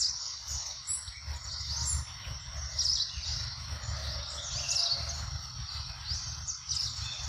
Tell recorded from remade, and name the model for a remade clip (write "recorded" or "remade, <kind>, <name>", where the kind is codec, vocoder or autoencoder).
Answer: recorded